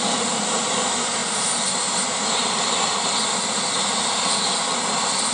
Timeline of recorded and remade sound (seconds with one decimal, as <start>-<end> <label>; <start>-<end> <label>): 0.0-5.3 recorded

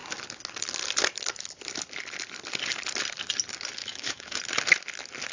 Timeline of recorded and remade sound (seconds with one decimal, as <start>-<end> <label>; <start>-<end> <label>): 0.0-3.8 recorded; 3.8-4.4 remade; 4.4-5.3 recorded

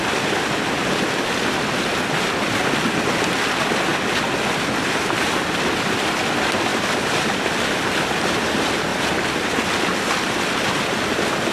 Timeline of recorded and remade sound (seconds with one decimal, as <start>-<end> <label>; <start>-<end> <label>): 0.0-6.7 recorded; 6.7-7.9 remade; 7.9-11.5 recorded

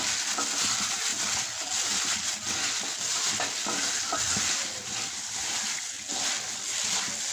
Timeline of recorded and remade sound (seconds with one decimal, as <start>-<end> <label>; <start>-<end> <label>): 0.0-7.3 recorded

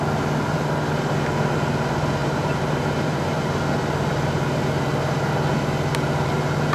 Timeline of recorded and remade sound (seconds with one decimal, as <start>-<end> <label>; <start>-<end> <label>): 0.0-2.2 recorded; 2.2-3.6 remade; 3.6-6.7 recorded

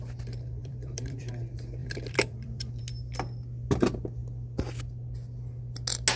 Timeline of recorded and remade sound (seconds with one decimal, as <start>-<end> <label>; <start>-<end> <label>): 0.0-0.6 recorded; 0.6-1.3 remade; 1.3-1.8 recorded; 1.8-2.8 remade; 2.8-6.2 recorded

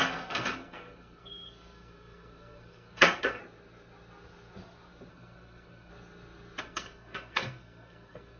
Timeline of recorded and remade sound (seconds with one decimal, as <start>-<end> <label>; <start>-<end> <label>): 0.0-3.4 remade; 3.4-5.1 recorded; 5.1-5.9 remade; 5.9-6.6 recorded; 6.6-8.4 remade